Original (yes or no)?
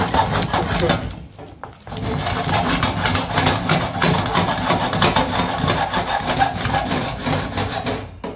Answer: yes